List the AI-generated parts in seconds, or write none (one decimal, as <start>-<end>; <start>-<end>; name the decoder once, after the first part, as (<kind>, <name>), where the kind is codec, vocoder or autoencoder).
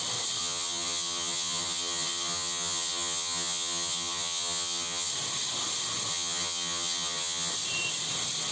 0.4-5.1 (vocoder, HiFi-GAN); 6.1-7.5